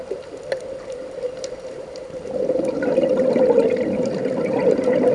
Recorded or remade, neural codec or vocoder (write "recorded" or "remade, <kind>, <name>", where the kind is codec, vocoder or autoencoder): recorded